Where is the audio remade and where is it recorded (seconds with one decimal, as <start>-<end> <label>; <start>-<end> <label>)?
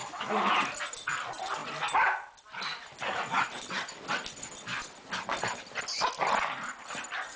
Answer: 0.0-0.5 remade; 0.5-7.4 recorded